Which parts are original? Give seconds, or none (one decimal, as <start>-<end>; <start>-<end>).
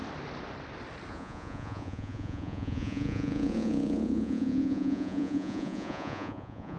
0.0-1.1